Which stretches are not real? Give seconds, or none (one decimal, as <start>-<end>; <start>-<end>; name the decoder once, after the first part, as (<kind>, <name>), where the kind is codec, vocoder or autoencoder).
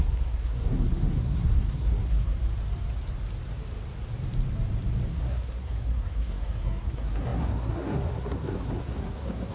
0.0-2.4 (codec, SNAC); 5.1-9.5